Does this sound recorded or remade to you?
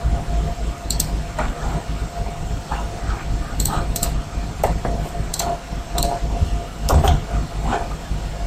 remade